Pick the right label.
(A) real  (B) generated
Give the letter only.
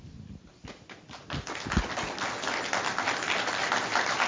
A